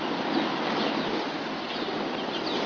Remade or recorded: recorded